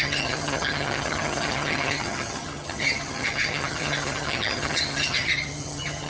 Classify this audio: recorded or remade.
remade